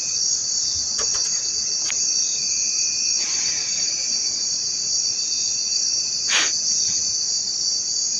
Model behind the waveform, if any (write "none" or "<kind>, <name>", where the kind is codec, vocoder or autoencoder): none